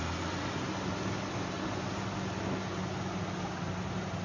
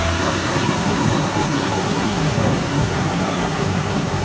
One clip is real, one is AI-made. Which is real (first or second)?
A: first